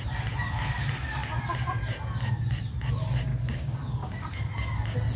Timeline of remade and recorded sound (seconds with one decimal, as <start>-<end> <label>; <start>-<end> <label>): 0.0-3.3 recorded; 3.3-4.4 remade; 4.4-5.2 recorded